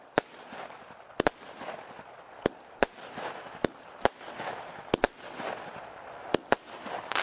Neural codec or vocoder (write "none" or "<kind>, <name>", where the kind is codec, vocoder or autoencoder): none